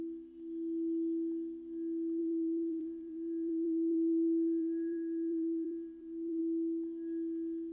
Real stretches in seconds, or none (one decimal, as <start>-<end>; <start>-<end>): 0.0-2.2; 6.4-7.7